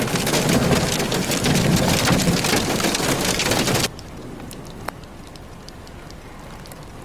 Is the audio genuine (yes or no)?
yes